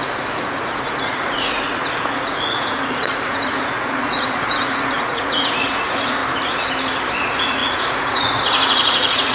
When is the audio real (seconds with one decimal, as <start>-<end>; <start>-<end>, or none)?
6.2-7.1